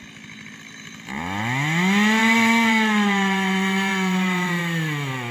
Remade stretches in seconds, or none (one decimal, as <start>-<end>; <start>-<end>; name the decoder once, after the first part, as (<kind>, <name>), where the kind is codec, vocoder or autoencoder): 2.2-4.6 (vocoder, BigVGAN v2)